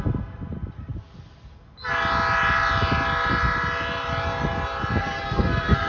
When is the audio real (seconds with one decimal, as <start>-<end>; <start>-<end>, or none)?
0.0-5.0